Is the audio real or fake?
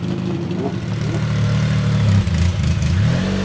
real